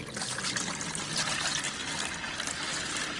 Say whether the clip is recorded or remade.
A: recorded